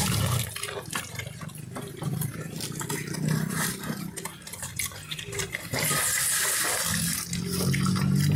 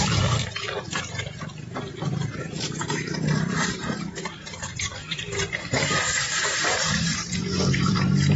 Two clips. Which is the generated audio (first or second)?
second